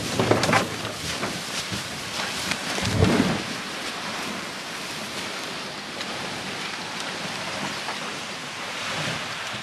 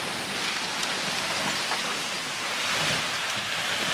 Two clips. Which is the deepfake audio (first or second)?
first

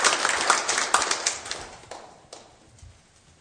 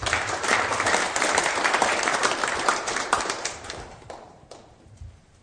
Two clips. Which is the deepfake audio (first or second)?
second